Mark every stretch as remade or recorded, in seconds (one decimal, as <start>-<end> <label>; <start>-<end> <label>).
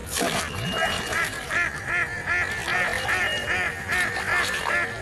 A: 0.0-1.8 remade; 1.8-5.0 recorded